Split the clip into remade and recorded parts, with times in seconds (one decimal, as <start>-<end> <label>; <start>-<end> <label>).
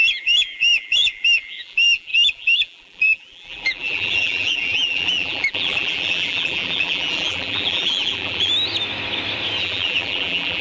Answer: 0.0-8.5 remade; 8.5-9.6 recorded; 9.6-10.6 remade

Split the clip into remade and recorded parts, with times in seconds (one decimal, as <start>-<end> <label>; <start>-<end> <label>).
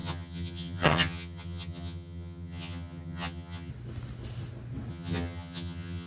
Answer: 0.0-3.7 remade; 3.7-4.9 recorded; 4.9-6.1 remade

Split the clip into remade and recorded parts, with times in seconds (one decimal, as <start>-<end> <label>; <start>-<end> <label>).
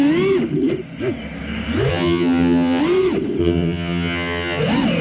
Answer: 0.0-1.9 recorded; 1.9-2.8 remade; 2.8-3.4 recorded; 3.4-4.6 remade; 4.6-5.0 recorded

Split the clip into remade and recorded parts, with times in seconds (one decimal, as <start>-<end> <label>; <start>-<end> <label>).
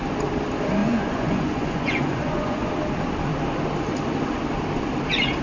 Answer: 0.0-0.8 recorded; 0.8-2.7 remade; 2.7-5.4 recorded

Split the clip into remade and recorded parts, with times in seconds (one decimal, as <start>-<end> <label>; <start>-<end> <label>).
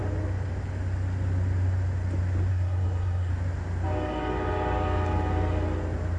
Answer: 0.0-2.5 recorded; 2.5-3.3 remade; 3.3-6.2 recorded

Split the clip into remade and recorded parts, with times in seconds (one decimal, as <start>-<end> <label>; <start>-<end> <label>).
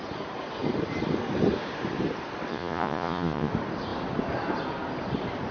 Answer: 0.0-2.5 recorded; 2.5-3.5 remade; 3.5-5.5 recorded